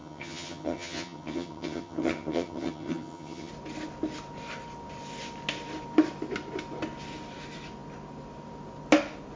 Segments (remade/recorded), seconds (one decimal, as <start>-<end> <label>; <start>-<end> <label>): 0.0-3.5 remade; 3.5-9.4 recorded